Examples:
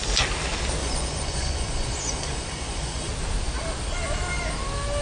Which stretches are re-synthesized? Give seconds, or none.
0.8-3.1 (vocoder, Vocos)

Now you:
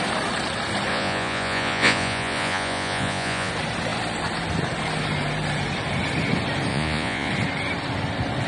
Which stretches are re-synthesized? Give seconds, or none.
0.9-3.5 (vocoder, Vocos); 6.7-7.3

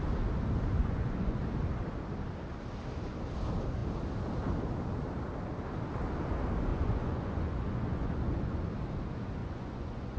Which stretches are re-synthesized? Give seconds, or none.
0.8-1.4 (vocoder, Vocos); 6.7-8.6; 9.4-10.2

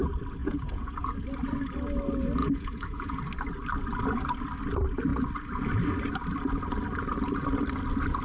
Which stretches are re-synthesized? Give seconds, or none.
0.4-1.1 (vocoder, Vocos); 2.4-3.2

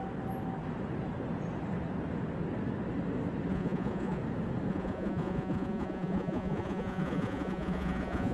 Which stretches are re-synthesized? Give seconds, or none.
3.5-4.2 (vocoder, Vocos); 4.7-8.3

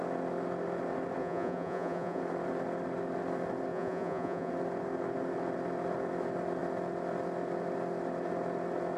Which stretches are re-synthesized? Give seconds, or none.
1.2-2.2 (vocoder, Vocos); 3.7-4.5

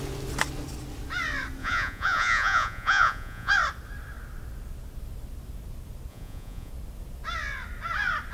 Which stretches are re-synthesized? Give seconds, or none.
1.6-3.5 (vocoder, Vocos); 6.1-6.7

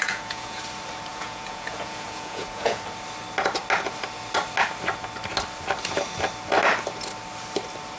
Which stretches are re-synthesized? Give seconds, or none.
0.0-0.6 (vocoder, Vocos); 1.1-2.8